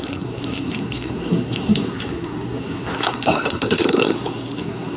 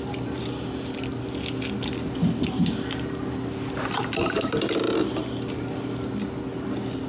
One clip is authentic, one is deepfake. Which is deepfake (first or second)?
first